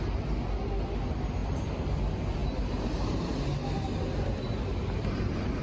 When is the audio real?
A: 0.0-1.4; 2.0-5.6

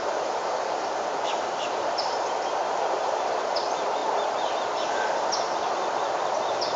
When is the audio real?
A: 0.0-6.8

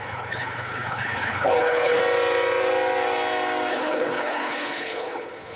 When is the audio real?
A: 2.0-3.7

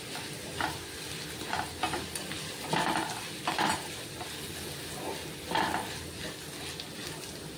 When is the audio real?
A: 0.0-3.7; 4.3-7.6

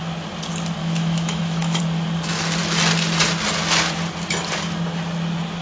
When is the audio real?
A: 0.0-0.8; 1.8-5.6

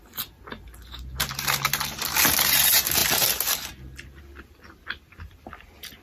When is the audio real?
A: 0.0-6.0

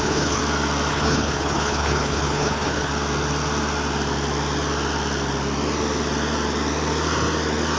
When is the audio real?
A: 0.4-0.9; 2.9-7.8

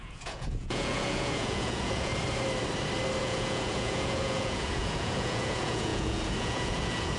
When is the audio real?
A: 2.1-3.2